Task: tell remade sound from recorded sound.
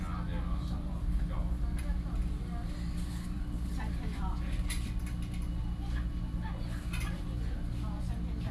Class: recorded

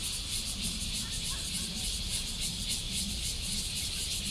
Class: recorded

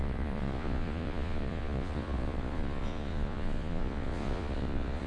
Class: remade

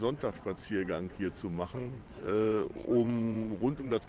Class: remade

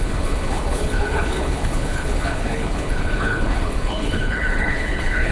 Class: remade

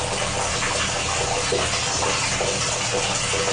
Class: recorded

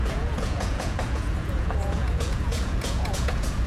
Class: remade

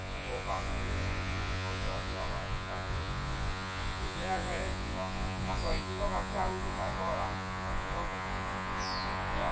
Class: remade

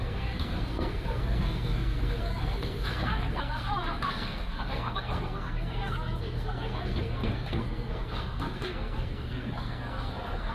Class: remade